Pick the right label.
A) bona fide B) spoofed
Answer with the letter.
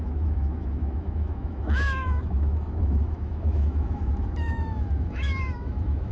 B